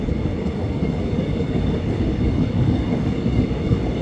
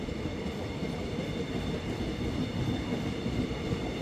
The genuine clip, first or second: second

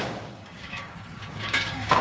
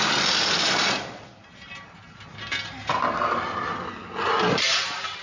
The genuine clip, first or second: second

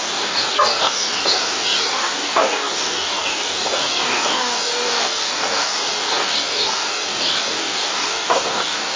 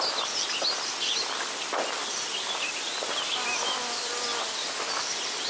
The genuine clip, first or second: second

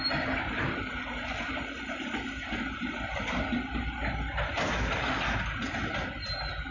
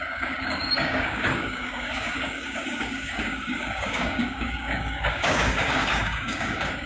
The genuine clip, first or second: first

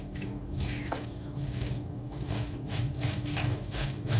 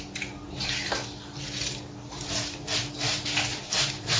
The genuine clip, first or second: second